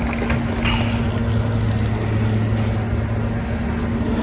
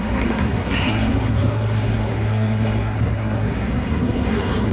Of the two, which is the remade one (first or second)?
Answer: second